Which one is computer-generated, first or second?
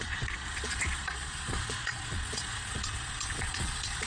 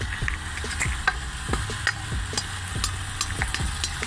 first